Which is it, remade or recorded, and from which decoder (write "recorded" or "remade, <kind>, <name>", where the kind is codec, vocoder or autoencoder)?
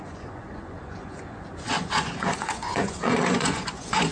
remade, vocoder, Vocos